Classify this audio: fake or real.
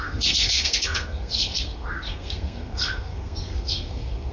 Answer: fake